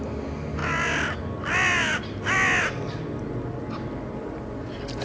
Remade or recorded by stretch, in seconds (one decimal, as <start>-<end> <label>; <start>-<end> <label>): 0.0-0.6 recorded; 0.6-3.2 remade; 3.2-5.0 recorded